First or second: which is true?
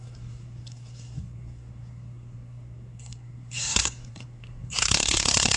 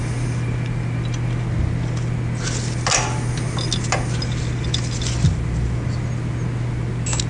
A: second